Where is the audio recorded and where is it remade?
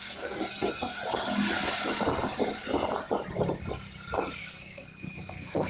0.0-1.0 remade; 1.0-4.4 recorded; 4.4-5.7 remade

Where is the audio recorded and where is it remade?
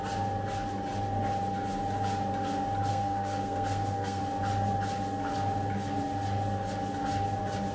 0.0-2.9 recorded; 2.9-4.2 remade; 4.2-7.7 recorded